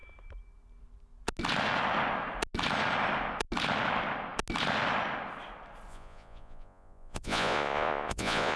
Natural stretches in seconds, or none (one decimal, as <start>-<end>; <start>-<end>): 0.0-5.9